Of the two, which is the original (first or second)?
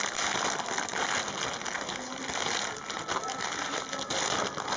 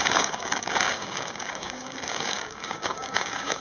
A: first